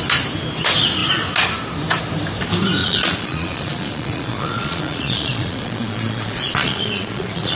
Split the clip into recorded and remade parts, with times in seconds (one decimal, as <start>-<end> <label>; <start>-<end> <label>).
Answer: 0.0-2.8 recorded; 2.8-7.6 remade